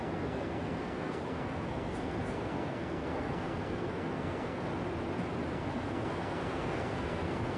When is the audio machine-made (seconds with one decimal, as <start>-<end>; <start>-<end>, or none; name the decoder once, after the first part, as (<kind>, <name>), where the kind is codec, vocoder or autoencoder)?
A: 0.0-4.7 (codec, SNAC); 5.5-7.6